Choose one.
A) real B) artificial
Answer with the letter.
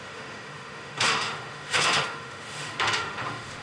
B